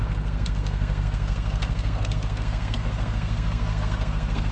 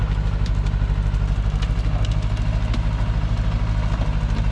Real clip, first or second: second